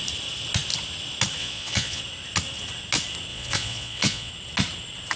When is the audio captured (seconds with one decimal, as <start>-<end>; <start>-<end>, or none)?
0.0-1.4; 2.0-3.3; 4.3-5.2